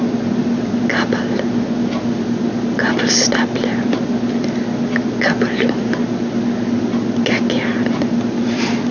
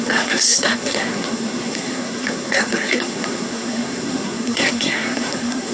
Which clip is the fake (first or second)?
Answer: second